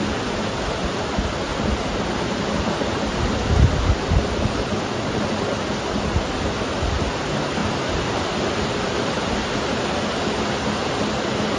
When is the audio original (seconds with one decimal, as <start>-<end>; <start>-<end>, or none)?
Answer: 0.0-1.5; 3.3-7.6; 8.2-11.6